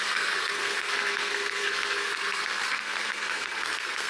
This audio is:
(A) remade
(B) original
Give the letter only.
A